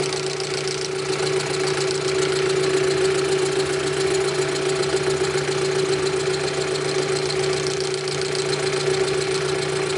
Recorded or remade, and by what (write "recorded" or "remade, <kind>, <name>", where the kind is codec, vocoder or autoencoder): recorded